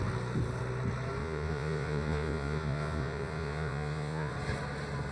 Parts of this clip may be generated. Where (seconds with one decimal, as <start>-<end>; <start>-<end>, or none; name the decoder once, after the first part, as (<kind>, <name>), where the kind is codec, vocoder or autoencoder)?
1.2-4.3 (vocoder, Vocos)